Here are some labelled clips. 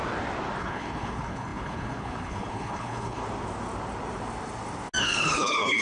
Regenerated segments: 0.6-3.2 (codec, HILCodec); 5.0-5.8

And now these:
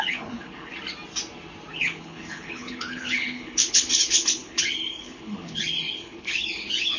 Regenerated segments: 0.0-0.7 (codec, HILCodec); 1.7-7.0

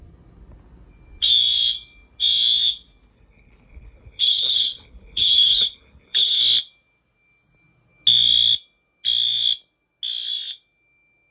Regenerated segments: 3.1-6.4 (codec, HILCodec)

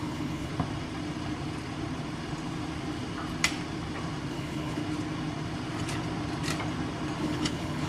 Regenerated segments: 0.0-0.5 (codec, HILCodec); 4.3-4.8; 7.2-7.9

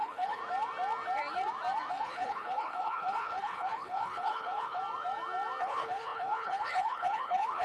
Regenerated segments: 0.0-0.4 (codec, HILCodec); 1.9-4.8; 5.6-7.6

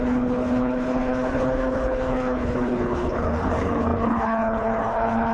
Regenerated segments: 0.0-5.3 (codec, HILCodec)

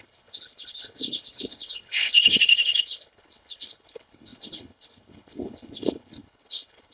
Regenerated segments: 0.0-6.9 (codec, HILCodec)